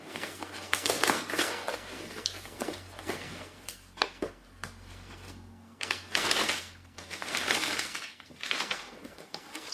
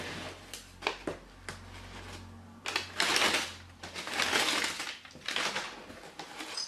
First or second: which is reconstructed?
first